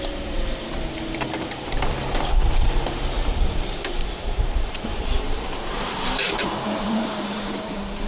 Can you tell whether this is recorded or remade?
remade